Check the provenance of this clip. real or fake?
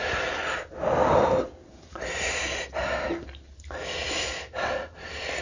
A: real